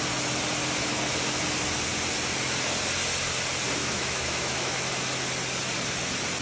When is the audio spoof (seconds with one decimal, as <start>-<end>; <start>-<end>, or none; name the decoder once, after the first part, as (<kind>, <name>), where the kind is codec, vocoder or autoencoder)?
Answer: 3.8-4.9 (autoencoder, DAC-VAE)